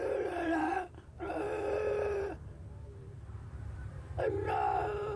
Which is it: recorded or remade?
remade